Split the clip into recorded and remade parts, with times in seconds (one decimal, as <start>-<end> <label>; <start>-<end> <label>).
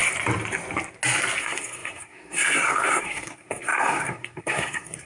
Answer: 0.0-1.4 recorded; 1.4-5.1 remade